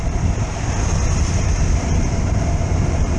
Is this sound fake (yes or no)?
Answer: yes